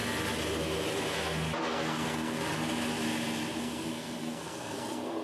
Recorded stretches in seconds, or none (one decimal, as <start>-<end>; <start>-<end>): 0.0-1.6; 2.4-3.6